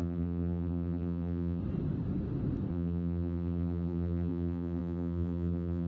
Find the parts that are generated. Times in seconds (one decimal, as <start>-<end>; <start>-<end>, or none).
0.0-1.6; 2.7-5.9